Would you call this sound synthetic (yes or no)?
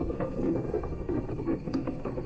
yes